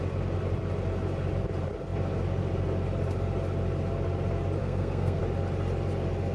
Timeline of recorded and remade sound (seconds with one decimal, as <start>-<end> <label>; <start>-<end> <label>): 0.0-4.6 recorded; 4.6-5.2 remade; 5.2-6.3 recorded